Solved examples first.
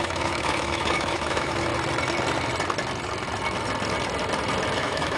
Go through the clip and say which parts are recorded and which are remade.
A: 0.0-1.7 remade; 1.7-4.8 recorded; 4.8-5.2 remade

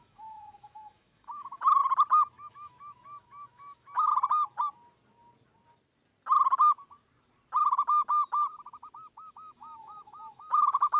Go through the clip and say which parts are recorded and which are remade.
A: 0.0-1.8 remade; 1.8-2.5 recorded; 2.5-4.1 remade; 4.1-9.3 recorded; 9.3-11.0 remade